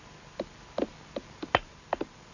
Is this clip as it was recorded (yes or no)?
yes